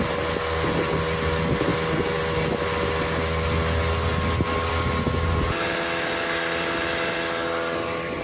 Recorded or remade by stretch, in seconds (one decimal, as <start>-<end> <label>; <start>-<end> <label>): 0.0-8.2 recorded